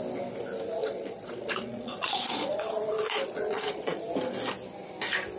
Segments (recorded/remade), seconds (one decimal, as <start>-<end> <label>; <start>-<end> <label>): 0.0-0.8 recorded; 0.8-4.0 remade; 4.0-5.4 recorded